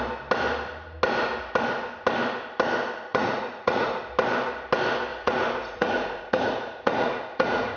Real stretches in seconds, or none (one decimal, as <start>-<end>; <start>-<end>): 0.0-3.1; 4.0-5.1